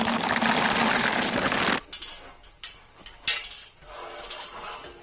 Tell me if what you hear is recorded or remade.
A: recorded